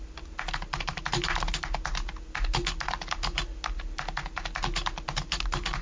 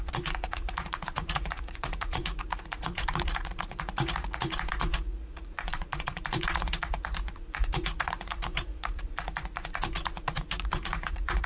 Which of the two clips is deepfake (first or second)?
second